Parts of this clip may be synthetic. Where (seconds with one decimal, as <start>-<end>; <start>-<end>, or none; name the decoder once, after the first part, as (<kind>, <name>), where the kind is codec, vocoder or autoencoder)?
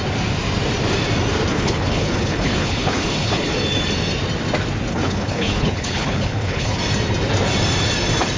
1.5-3.5 (codec, HILCodec); 4.9-6.8